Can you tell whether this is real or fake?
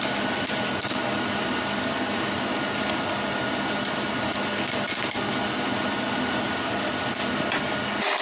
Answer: real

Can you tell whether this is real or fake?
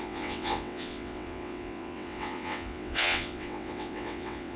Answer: fake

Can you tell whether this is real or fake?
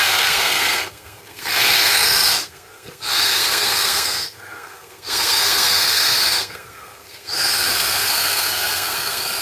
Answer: fake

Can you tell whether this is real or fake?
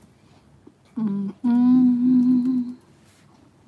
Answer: real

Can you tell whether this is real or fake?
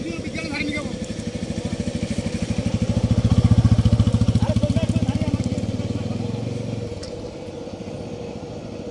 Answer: real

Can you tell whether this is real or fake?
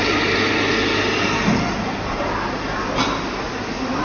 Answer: real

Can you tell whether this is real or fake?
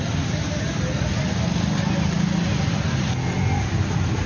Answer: real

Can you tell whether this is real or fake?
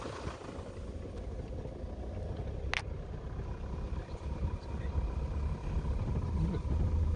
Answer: real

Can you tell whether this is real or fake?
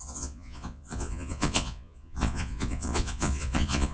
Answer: fake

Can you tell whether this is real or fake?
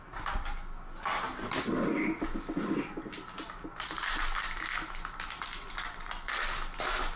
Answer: real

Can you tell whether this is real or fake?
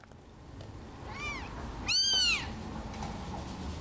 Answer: real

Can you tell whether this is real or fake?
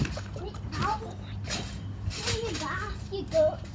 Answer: real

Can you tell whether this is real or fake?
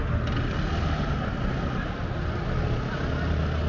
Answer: real